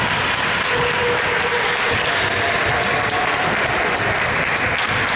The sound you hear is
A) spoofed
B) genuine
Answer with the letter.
B